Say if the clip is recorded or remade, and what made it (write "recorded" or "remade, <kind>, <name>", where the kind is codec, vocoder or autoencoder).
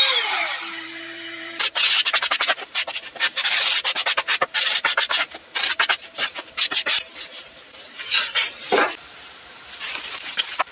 remade, vocoder, BigVGAN v2